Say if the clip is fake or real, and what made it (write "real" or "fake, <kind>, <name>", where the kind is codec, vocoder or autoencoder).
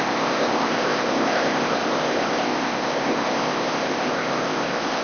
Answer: fake, codec, ZipCodec